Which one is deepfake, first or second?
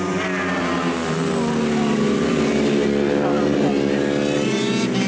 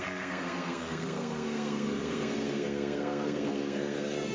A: second